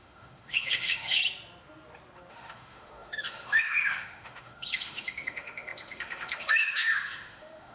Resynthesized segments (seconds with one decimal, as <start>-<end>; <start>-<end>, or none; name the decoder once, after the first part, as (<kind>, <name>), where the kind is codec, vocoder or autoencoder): 0.0-1.2 (autoencoder, DAC-VAE); 2.3-7.7